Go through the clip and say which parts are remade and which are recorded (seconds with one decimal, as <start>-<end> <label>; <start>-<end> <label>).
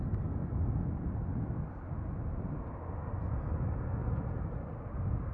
0.0-5.3 recorded